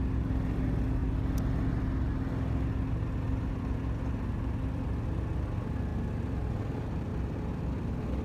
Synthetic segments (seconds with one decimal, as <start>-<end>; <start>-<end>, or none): none